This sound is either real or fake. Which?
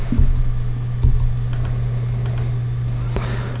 real